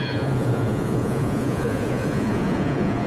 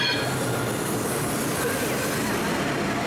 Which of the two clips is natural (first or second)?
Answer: second